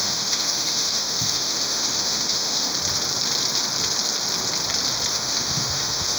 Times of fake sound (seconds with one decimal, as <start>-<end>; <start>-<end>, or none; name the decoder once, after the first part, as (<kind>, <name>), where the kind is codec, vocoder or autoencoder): 0.0-2.7 (autoencoder, DAC-VAE); 5.1-6.2